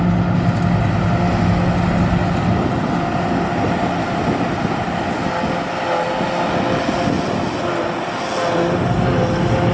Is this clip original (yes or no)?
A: yes